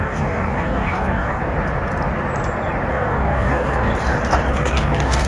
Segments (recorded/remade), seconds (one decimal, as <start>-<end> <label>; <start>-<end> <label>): 0.0-1.4 remade; 1.4-2.9 recorded; 2.9-3.9 remade; 3.9-4.5 recorded; 4.5-5.3 remade